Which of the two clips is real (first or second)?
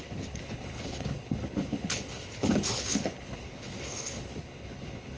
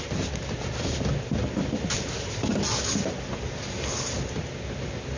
second